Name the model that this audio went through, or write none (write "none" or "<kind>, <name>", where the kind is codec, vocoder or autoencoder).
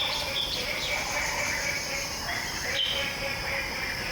none